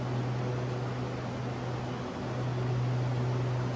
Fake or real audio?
real